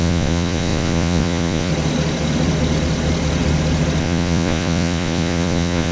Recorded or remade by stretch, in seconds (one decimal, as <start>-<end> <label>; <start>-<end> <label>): 0.0-1.7 remade; 1.7-4.0 recorded; 4.0-5.9 remade